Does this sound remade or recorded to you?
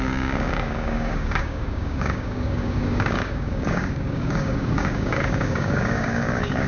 remade